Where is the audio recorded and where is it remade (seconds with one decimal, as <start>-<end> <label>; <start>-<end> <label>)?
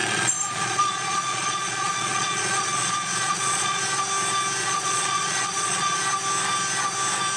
0.0-3.8 remade; 3.8-4.6 recorded; 4.6-6.0 remade; 6.0-7.4 recorded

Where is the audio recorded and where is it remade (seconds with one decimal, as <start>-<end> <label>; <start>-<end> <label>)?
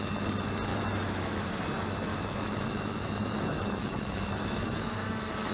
0.0-0.7 recorded; 0.7-1.5 remade; 1.5-2.1 recorded; 2.1-5.5 remade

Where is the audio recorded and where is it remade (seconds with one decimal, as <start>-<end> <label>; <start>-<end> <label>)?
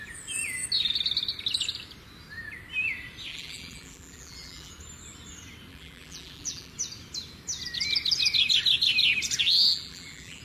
0.0-3.3 recorded; 3.3-4.7 remade; 4.7-5.7 recorded; 5.7-6.7 remade; 6.7-9.7 recorded; 9.7-10.4 remade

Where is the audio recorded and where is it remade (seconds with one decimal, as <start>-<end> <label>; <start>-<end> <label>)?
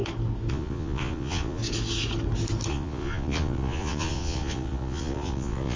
0.0-0.5 recorded; 0.5-1.6 remade; 1.6-2.7 recorded; 2.7-5.8 remade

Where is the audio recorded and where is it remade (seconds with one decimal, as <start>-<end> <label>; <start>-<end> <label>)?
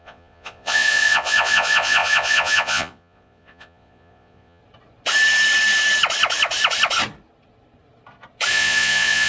0.0-4.6 remade; 4.6-8.5 recorded; 8.5-9.3 remade